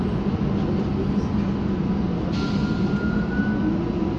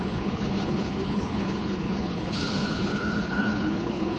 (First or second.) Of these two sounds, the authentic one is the first